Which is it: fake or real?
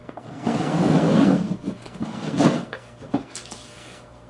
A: fake